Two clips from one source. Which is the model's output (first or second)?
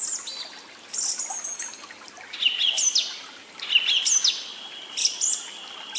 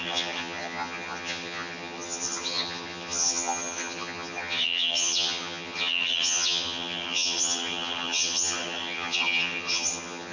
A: second